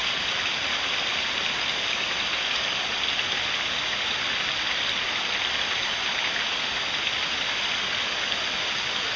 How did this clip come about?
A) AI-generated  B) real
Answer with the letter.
B